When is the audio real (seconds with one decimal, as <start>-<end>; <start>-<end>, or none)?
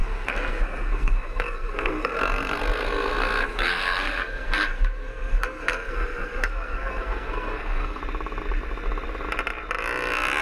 8.0-10.4